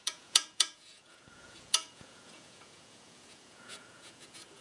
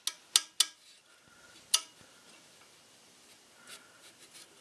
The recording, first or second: second